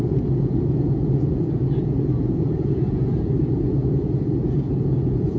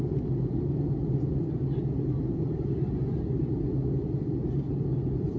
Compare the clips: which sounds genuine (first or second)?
second